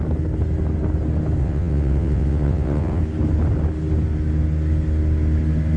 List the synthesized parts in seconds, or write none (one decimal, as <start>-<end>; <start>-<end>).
1.4-3.0

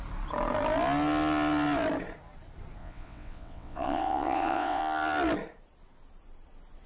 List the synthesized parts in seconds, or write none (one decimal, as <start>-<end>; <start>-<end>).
2.8-4.8

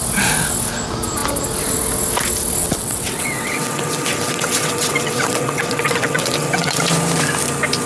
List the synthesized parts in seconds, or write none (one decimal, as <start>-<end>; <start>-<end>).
2.6-6.8

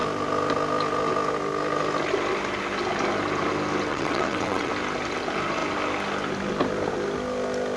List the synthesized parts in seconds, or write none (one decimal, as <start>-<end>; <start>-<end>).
3.9-4.7

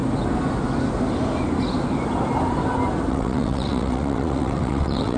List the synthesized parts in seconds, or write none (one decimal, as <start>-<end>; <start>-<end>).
3.1-5.2